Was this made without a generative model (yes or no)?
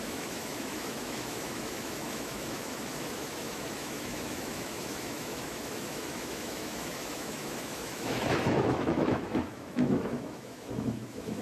no